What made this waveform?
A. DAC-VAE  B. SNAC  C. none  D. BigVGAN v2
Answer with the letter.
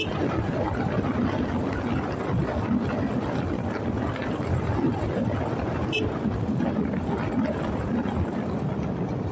C